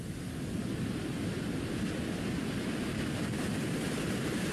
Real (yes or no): no